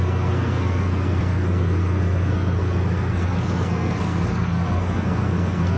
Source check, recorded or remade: remade